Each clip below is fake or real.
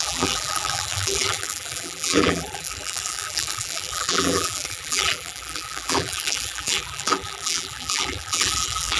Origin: fake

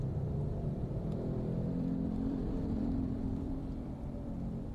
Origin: fake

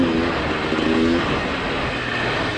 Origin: real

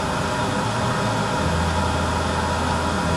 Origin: real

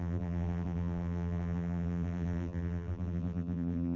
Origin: fake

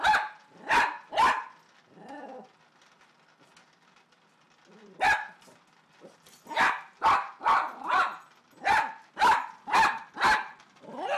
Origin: real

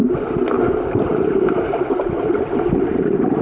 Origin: real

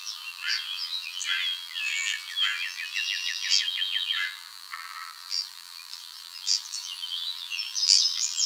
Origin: fake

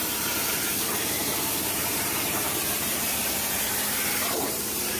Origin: fake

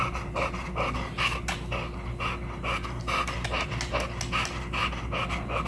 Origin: real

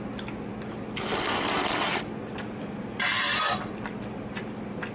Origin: real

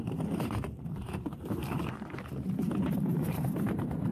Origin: fake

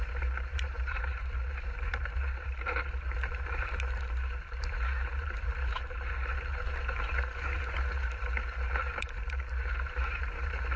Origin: fake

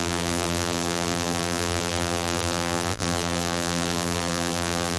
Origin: fake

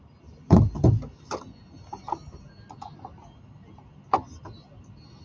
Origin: real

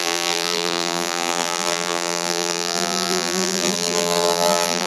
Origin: fake